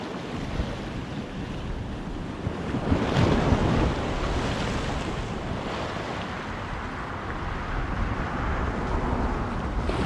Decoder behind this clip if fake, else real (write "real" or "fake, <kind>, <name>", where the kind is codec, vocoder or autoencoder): real